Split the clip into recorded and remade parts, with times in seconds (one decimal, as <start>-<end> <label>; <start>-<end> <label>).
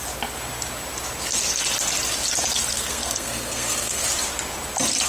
0.0-2.7 recorded; 2.7-4.1 remade; 4.1-5.1 recorded